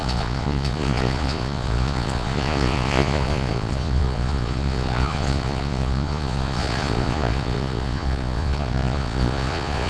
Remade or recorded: remade